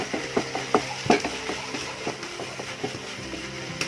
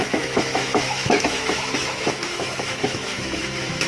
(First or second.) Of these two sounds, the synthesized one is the second